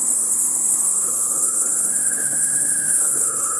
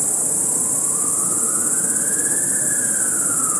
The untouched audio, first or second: second